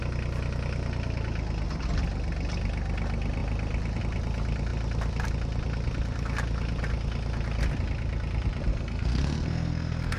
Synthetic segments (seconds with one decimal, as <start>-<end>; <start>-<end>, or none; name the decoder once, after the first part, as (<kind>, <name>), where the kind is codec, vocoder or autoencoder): 8.7-10.2 (codec, SNAC)